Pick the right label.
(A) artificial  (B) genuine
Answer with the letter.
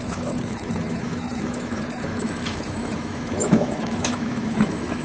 A